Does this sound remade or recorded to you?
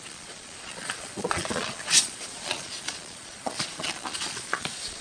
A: remade